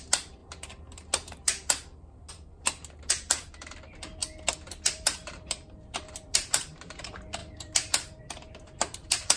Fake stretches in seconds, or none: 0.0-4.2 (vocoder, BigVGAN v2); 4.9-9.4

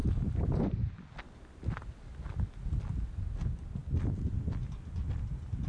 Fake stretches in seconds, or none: none

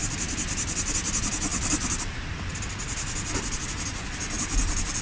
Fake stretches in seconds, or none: none

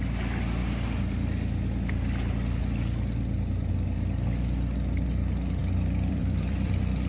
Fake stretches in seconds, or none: 5.6-7.1 (vocoder, BigVGAN v2)

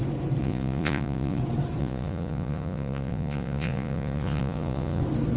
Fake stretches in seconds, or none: 0.4-1.4 (vocoder, Vocos); 1.8-5.0

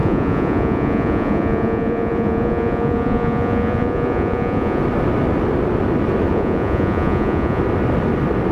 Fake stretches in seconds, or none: 0.0-4.8 (vocoder, Vocos); 6.3-7.6

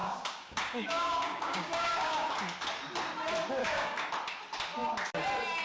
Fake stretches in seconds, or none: 0.0-2.3 (codec, DAC); 3.6-4.1

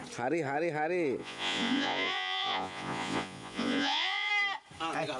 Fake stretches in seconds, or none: 1.2-4.3 (vocoder, Vocos)